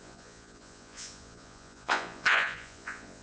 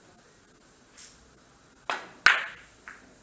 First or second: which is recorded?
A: second